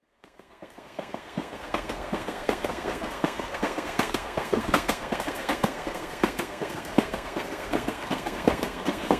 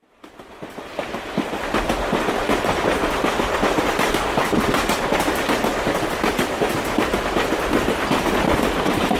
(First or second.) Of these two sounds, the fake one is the first